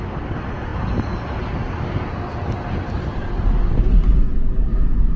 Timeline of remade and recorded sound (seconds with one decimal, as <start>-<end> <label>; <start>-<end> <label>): 0.0-5.2 recorded